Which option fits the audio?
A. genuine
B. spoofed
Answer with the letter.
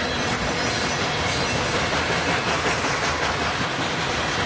A